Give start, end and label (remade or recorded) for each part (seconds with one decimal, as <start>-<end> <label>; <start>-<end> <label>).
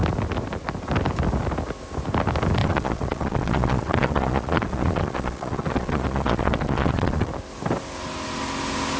0.0-2.6 recorded; 2.6-7.3 remade; 7.3-9.0 recorded